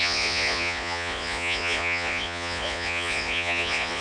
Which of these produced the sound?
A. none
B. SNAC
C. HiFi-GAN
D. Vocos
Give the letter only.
D